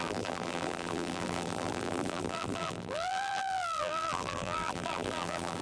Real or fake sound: fake